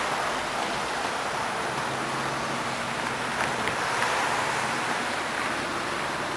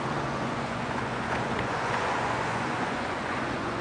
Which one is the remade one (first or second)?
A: second